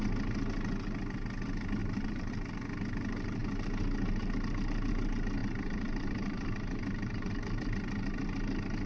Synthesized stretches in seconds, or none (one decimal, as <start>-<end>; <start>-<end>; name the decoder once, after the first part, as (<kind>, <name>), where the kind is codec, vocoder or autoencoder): 1.8-2.3 (vocoder, BigVGAN v2); 5.4-7.3